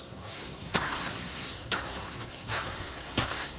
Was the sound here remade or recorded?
remade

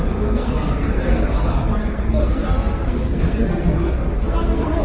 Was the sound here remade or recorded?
remade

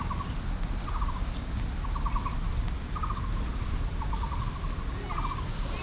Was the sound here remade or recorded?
recorded